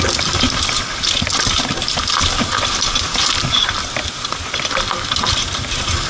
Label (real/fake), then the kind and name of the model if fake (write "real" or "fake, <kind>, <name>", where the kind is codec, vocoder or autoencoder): real